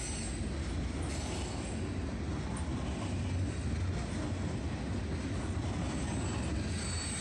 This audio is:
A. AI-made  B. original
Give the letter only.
B